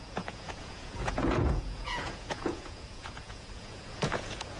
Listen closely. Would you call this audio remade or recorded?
remade